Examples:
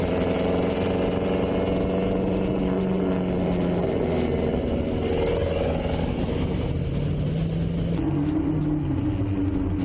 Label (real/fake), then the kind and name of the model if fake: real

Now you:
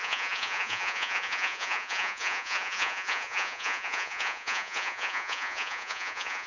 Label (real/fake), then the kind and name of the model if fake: fake, vocoder, Vocos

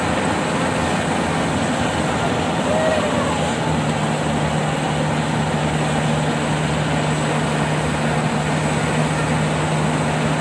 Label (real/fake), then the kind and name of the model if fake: real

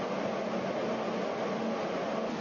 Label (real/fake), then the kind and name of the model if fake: real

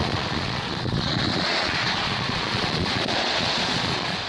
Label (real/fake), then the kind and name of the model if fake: fake, vocoder, Vocos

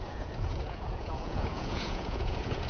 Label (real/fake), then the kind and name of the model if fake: fake, vocoder, Vocos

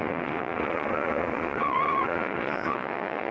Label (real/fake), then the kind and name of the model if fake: fake, vocoder, Vocos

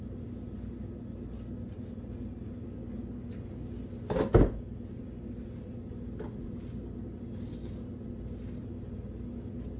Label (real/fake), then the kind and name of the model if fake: real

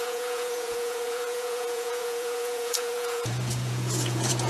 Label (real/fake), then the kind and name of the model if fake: fake, vocoder, Vocos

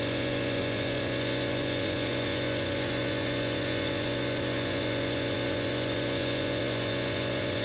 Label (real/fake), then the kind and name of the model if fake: fake, vocoder, Vocos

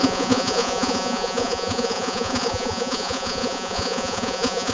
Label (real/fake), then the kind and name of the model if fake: fake, vocoder, Vocos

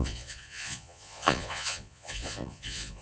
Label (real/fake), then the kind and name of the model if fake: fake, vocoder, Vocos